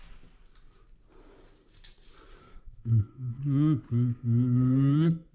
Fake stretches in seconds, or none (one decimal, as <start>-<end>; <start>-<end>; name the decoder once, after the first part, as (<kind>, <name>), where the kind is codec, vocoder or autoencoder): 2.4-3.4 (codec, SNAC); 3.9-5.3